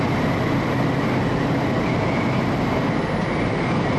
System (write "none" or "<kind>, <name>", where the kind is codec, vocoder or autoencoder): none